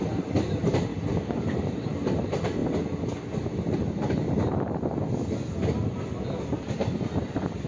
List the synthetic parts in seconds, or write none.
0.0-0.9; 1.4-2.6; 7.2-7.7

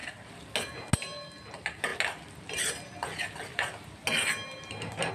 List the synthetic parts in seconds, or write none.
none

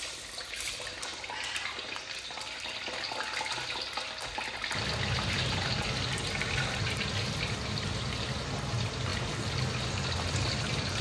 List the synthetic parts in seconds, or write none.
none

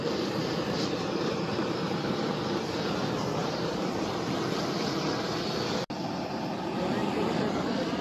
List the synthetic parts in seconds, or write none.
0.4-2.3; 3.4-4.2

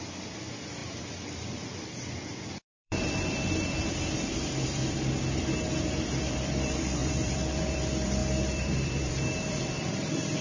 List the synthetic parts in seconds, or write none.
0.0-4.8; 6.0-10.4

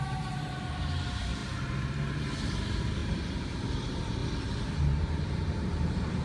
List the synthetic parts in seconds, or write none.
0.0-1.4; 1.9-4.2; 4.8-6.2

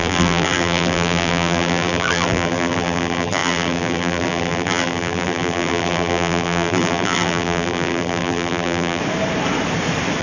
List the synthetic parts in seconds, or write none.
0.0-9.0

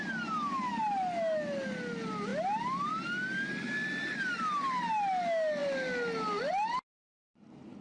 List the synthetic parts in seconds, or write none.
none